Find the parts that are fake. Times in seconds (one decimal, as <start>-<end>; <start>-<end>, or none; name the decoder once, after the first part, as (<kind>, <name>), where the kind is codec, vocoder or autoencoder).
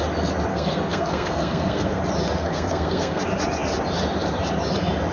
0.5-2.0 (codec, SNAC); 2.4-3.2